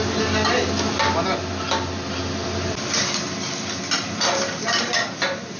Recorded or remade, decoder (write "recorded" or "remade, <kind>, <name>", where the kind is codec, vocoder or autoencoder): recorded